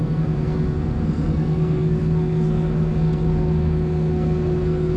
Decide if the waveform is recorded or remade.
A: remade